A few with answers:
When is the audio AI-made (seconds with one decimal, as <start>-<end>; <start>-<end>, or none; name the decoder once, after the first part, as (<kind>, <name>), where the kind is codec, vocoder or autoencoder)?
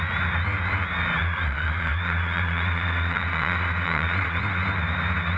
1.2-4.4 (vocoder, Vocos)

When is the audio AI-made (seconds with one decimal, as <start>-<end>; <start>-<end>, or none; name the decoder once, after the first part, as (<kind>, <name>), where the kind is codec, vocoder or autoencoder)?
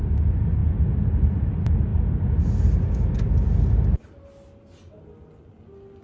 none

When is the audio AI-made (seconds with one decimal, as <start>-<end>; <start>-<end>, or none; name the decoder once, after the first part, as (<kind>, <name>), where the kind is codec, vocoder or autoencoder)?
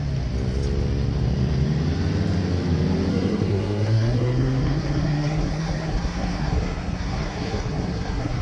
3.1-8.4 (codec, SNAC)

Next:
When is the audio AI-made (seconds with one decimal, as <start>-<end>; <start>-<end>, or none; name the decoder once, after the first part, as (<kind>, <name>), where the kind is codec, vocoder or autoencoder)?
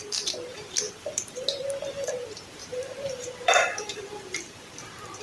0.5-1.1 (vocoder, BigVGAN v2); 2.6-5.2